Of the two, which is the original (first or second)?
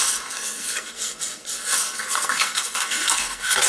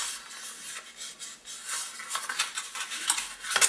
second